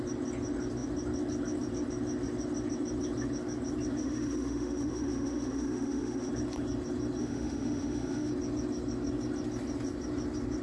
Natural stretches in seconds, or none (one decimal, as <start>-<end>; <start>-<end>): 0.0-4.0; 6.3-7.2; 8.3-10.6

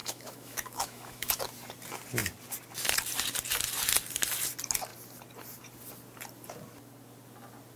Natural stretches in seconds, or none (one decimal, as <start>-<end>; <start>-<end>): 1.4-7.8

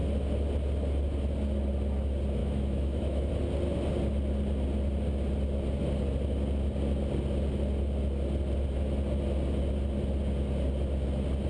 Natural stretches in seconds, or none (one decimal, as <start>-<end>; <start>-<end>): 0.0-2.4; 3.3-11.5

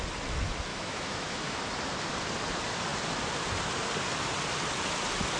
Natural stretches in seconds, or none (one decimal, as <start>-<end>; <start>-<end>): 0.0-0.7; 1.6-5.4

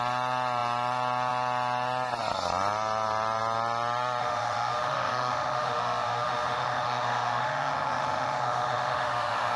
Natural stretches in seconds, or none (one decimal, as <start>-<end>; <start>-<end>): 0.0-4.2